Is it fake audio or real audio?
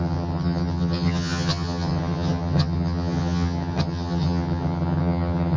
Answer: fake